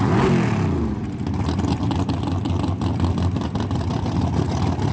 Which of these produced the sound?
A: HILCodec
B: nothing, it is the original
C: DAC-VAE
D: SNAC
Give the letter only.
B